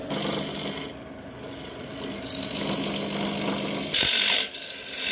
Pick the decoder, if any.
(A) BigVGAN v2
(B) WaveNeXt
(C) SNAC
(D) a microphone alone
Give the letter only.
D